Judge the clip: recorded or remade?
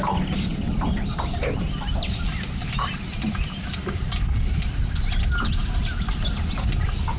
recorded